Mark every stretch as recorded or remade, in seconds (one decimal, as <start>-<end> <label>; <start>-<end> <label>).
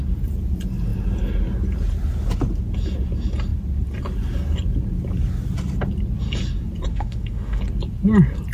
0.0-6.9 recorded; 6.9-7.6 remade; 7.6-8.5 recorded